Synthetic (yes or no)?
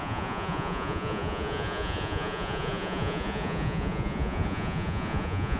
yes